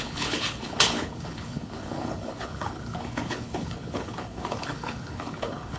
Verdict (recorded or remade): remade